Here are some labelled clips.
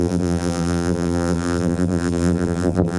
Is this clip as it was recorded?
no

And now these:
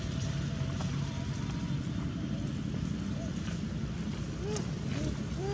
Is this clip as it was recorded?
yes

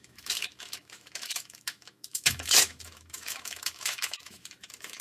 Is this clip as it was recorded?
no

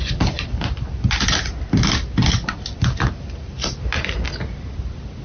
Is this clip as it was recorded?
no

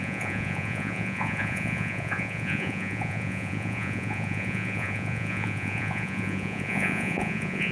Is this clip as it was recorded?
no